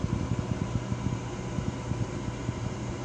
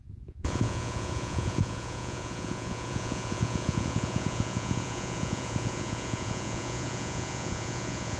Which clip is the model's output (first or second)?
second